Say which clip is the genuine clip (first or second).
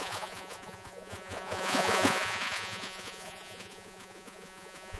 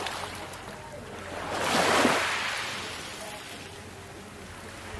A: second